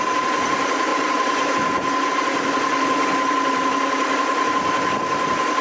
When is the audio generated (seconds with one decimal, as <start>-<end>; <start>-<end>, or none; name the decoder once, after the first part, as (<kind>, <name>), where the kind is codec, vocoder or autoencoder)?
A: 0.0-0.9 (vocoder, BigVGAN v2); 2.1-5.6